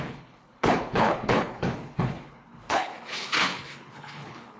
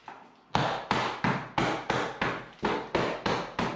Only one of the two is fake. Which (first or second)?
first